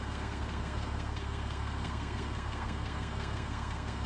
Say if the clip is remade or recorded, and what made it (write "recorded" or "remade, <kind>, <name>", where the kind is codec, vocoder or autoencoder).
remade, codec, SNAC